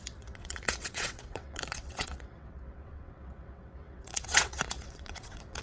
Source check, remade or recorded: remade